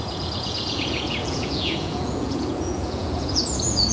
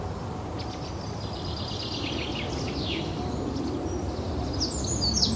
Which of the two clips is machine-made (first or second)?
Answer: first